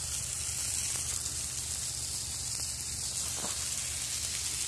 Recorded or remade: recorded